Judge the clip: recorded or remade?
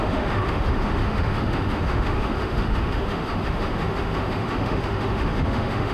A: remade